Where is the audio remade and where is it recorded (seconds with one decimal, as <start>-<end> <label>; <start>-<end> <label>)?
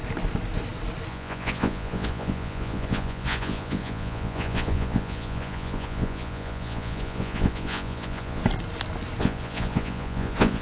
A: 0.0-1.1 recorded; 1.1-8.4 remade; 8.4-9.2 recorded; 9.2-10.6 remade